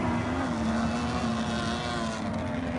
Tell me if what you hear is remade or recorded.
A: recorded